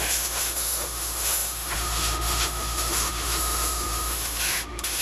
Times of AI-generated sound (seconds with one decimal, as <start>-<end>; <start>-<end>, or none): 0.0-5.0